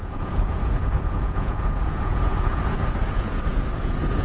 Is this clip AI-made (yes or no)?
yes